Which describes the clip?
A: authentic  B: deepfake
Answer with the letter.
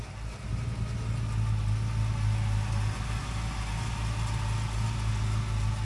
A